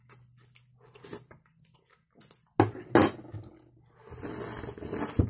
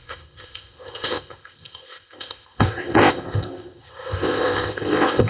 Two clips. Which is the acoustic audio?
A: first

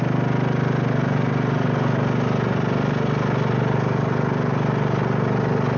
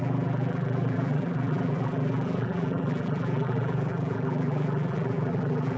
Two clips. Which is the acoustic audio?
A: first